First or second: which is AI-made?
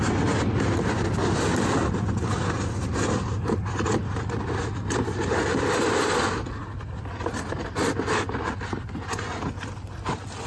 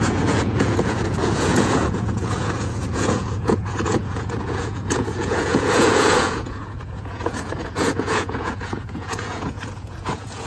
second